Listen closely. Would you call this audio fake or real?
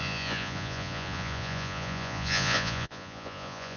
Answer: fake